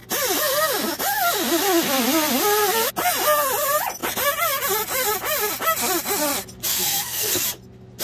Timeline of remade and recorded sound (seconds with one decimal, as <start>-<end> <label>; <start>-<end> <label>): 0.0-6.7 recorded; 6.7-7.4 remade; 7.4-8.0 recorded